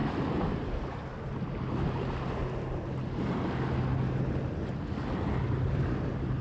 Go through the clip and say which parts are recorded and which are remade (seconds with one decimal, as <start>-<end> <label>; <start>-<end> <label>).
0.0-6.4 recorded